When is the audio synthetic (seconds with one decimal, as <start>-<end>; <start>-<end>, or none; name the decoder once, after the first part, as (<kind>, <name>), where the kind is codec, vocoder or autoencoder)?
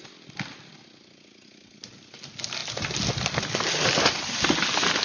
none